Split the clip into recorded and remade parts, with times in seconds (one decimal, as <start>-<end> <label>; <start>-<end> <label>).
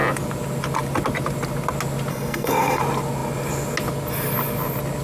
0.0-2.1 recorded; 2.1-2.8 remade; 2.8-5.0 recorded